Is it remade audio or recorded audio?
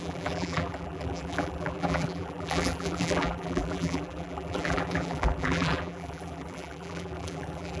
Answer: remade